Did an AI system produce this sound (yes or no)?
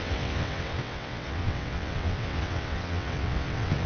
yes